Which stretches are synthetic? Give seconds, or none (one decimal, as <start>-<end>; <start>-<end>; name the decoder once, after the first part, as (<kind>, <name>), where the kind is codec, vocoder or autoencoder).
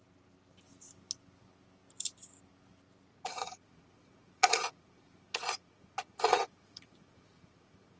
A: 3.1-8.0 (vocoder, Vocos)